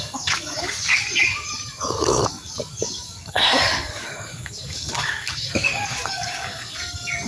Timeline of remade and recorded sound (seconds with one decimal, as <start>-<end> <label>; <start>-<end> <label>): 0.0-7.3 remade